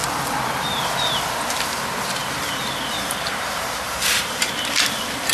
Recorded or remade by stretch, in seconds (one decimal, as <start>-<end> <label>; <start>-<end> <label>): 0.0-2.2 recorded; 2.2-4.5 remade; 4.5-5.3 recorded